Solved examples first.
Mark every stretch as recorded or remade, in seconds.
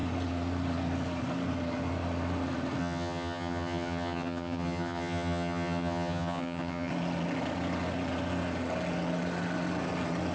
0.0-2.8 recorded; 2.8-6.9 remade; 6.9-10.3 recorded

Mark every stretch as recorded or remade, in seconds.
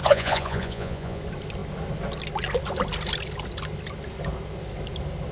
0.0-1.2 remade; 1.2-5.3 recorded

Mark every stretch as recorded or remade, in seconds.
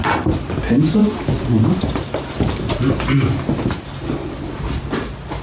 0.0-1.0 recorded; 1.0-2.5 remade; 2.5-5.4 recorded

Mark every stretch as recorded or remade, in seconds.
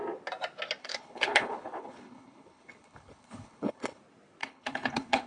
0.0-0.8 recorded; 0.8-4.0 remade; 4.0-4.4 recorded; 4.4-5.3 remade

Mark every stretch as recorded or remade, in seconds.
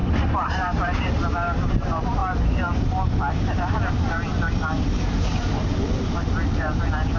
0.0-2.2 remade; 2.2-3.3 recorded; 3.3-7.2 remade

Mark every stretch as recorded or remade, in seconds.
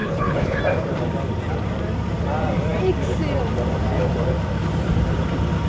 0.0-0.6 remade; 0.6-5.7 recorded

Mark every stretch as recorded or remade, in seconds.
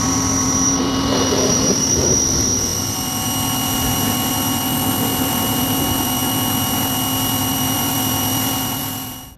0.0-6.2 remade; 6.2-7.4 recorded; 7.4-9.4 remade